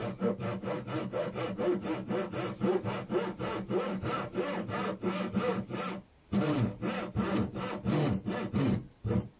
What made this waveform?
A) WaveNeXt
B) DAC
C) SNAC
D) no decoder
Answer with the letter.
D